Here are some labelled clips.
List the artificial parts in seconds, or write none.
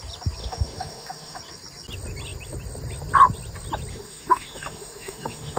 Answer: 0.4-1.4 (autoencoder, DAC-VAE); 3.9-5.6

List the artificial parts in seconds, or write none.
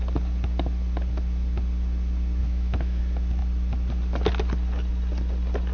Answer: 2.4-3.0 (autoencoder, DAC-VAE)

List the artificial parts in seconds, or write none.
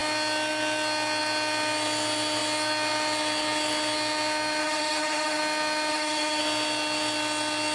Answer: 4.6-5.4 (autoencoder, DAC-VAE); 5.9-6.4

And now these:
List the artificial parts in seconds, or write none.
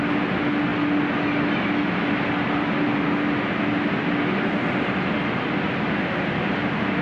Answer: none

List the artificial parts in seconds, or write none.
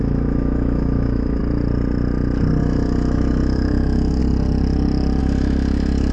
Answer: 0.0-1.4 (autoencoder, DAC-VAE); 2.6-4.2; 5.2-6.1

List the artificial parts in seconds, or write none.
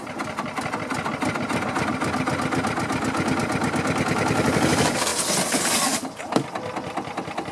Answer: none